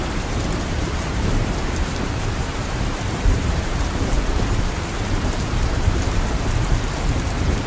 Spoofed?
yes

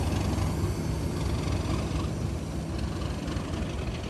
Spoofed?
no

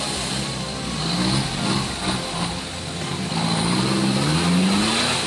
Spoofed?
no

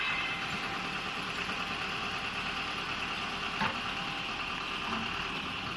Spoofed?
yes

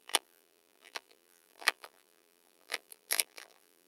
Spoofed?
yes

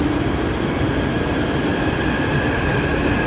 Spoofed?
no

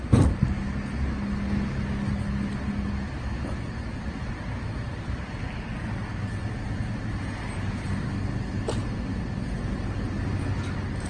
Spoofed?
no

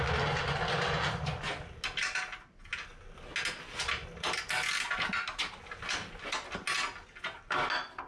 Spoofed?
no